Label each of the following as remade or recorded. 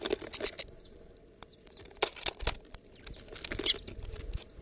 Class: recorded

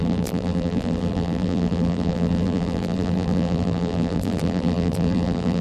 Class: remade